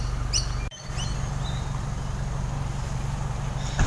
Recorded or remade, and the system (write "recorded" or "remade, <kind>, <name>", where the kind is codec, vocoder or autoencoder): recorded